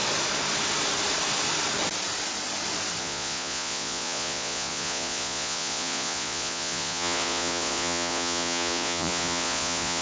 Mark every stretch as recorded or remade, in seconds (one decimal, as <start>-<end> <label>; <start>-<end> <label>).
0.0-3.0 recorded; 3.0-10.0 remade